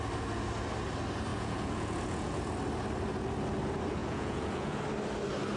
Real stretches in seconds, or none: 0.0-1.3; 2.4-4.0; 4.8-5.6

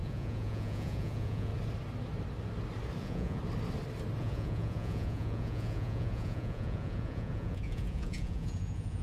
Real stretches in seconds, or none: 1.5-3.0; 3.4-4.2

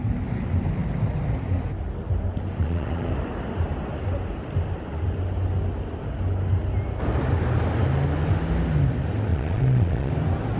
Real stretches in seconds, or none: 0.0-2.6; 3.1-9.3; 10.1-10.6

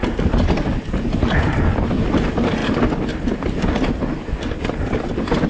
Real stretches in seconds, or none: 0.0-5.5

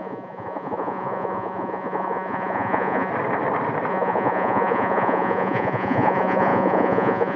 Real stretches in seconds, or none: 3.1-3.9

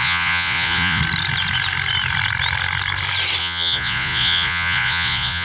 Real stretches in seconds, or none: 1.0-3.4

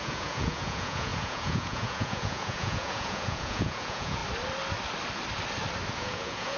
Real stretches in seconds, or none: 4.2-5.9